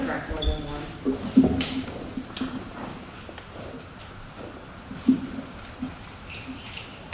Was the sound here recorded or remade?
recorded